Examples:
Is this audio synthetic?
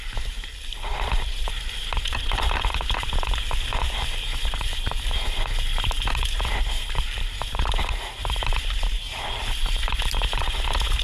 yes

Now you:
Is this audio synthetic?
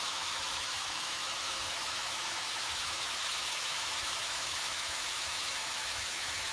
yes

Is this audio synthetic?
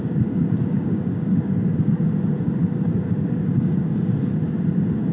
yes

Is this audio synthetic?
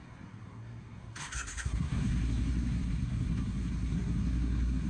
yes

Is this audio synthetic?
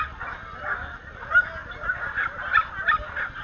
no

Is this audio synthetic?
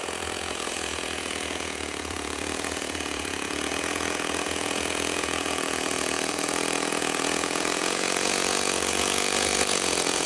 yes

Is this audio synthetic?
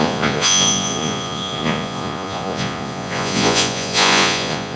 yes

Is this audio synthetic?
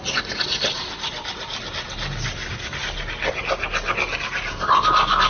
no